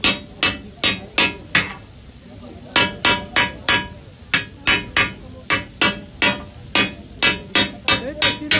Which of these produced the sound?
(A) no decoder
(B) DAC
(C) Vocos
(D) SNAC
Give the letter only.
A